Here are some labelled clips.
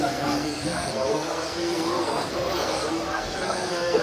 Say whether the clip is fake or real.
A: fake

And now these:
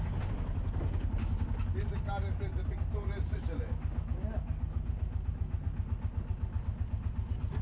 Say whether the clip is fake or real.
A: real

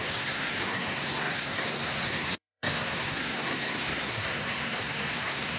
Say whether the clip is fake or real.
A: fake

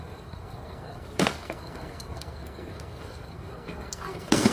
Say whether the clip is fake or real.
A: fake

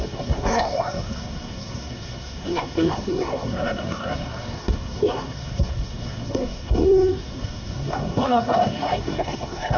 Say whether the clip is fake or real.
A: fake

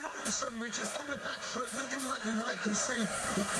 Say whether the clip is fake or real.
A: fake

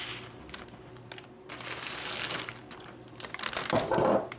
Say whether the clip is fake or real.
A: real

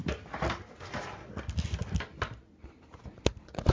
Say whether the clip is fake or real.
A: real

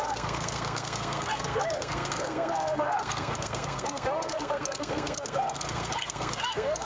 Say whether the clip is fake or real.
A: fake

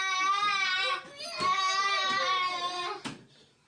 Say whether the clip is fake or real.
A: real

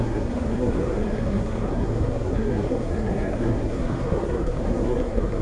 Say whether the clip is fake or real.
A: fake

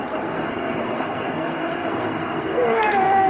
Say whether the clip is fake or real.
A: fake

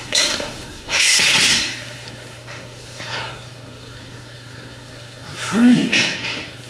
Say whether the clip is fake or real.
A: fake